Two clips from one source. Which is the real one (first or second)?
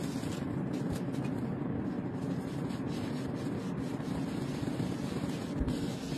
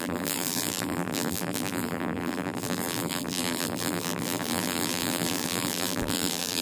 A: first